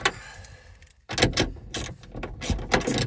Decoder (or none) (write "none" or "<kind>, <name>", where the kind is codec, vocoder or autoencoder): none